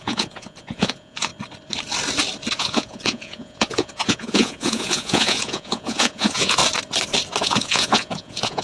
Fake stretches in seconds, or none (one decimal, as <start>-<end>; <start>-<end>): 0.0-1.3; 2.6-6.6; 7.4-8.6

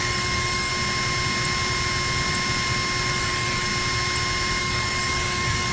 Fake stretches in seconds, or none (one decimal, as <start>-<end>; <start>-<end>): 0.0-0.7; 3.2-3.7; 4.6-5.7

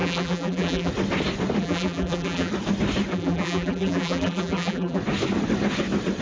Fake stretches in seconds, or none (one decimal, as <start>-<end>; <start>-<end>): 0.0-0.9; 1.6-2.5; 3.1-5.0

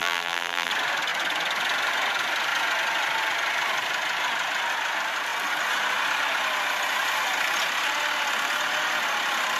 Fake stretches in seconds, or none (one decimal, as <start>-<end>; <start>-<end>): 0.0-0.7

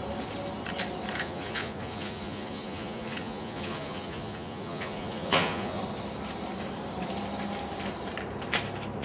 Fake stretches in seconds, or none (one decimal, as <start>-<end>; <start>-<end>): 1.2-5.8

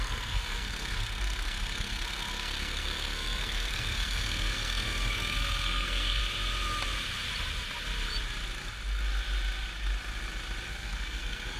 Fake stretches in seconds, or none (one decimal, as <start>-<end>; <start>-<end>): 0.0-6.2; 10.7-11.6

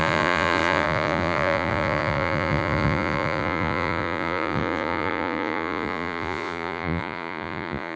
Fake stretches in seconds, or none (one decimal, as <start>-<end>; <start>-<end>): 0.0-8.0

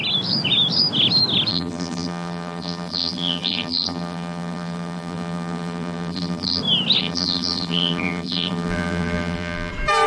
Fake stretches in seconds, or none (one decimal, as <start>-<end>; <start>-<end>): 1.5-6.6; 7.0-9.7